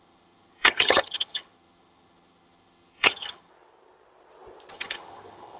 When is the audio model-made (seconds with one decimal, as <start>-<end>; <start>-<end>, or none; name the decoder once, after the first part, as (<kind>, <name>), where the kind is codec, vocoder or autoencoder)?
0.0-3.5 (vocoder, HiFi-GAN); 4.7-5.6